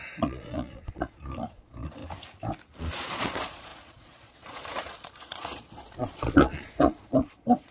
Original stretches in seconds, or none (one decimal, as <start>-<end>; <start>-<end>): 2.0-2.8